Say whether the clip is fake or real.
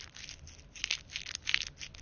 real